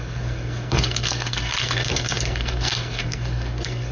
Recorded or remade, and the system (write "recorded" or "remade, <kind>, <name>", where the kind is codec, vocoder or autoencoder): remade, codec, SNAC